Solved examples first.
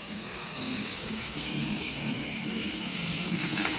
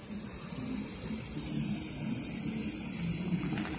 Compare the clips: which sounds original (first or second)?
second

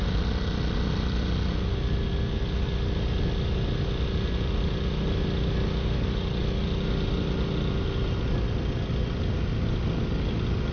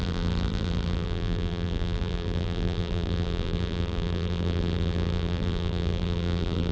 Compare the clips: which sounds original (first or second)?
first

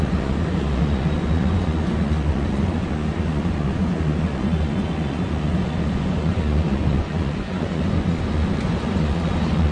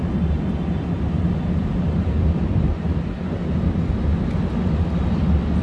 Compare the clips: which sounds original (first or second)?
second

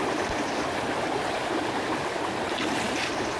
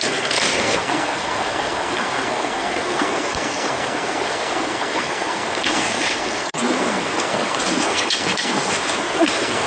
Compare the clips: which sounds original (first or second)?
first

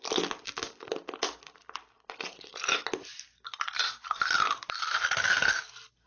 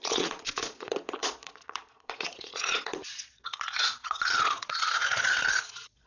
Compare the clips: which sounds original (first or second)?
first